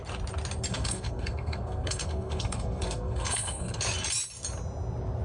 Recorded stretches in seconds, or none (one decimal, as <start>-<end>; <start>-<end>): 0.0-0.7; 3.8-5.2